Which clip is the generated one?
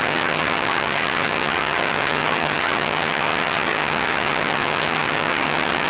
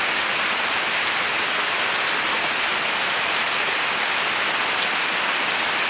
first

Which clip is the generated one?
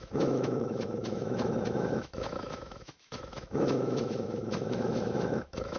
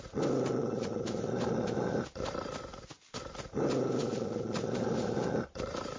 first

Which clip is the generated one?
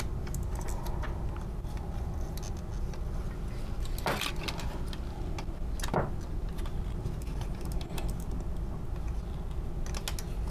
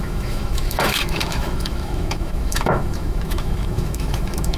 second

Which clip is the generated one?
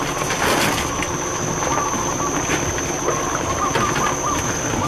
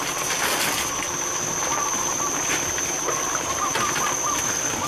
second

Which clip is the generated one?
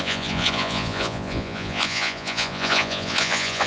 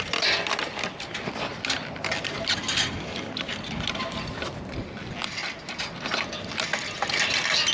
first